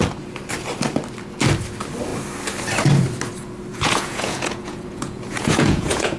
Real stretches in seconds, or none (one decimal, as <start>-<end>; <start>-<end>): 0.0-3.7